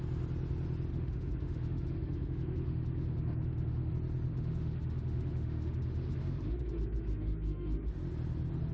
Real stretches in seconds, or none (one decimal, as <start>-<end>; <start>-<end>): 0.0-0.9; 3.9-4.3; 7.9-8.7

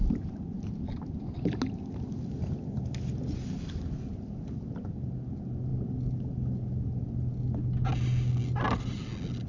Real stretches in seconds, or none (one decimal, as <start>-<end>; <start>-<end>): 0.0-9.5

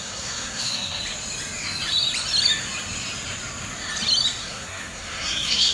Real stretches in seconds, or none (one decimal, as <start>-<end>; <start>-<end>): 1.0-4.4

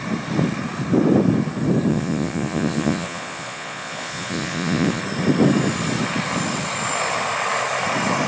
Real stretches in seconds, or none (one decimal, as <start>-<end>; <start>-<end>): 0.0-1.9; 5.0-8.3

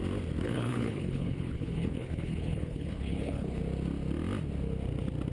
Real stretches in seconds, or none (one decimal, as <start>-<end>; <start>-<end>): 0.0-0.4; 3.6-5.3

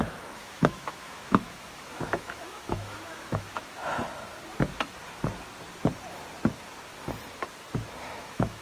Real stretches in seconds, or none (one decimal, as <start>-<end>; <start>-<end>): 3.8-8.0